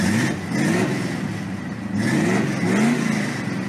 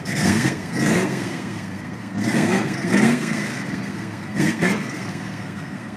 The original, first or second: first